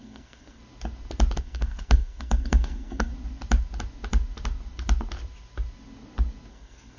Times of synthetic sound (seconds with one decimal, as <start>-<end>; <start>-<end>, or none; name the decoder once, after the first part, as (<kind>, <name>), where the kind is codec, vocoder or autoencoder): 0.0-0.6 (codec, SNAC); 1.4-3.1; 6.5-7.0